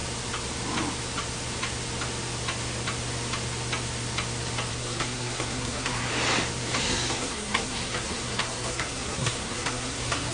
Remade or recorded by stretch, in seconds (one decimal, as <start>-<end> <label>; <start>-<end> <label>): 0.0-4.7 recorded; 4.7-6.1 remade; 6.1-6.8 recorded; 6.8-10.3 remade